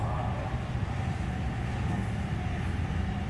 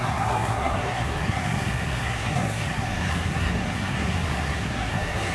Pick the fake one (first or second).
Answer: second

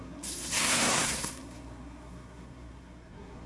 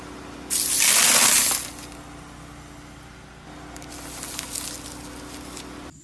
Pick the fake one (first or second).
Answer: first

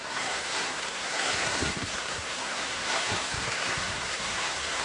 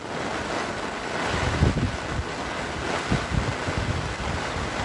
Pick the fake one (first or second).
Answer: first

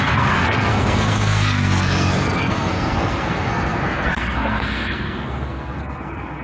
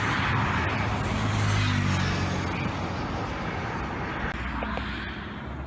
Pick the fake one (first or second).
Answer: first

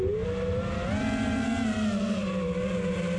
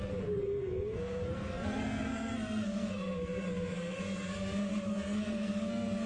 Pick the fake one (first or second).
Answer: second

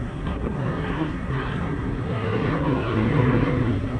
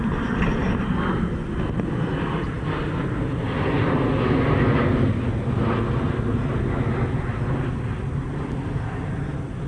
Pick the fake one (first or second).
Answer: first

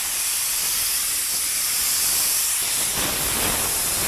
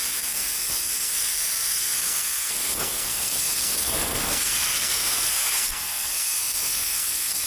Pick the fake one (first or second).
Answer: second